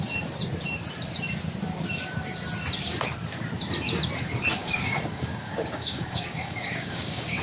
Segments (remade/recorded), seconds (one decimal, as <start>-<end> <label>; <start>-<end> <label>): 0.0-4.6 recorded; 4.6-7.4 remade